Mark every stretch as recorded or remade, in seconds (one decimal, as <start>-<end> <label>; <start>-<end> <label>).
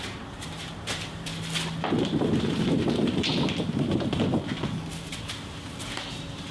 0.0-1.3 remade; 1.3-2.4 recorded; 2.4-3.3 remade; 3.3-5.1 recorded; 5.1-6.5 remade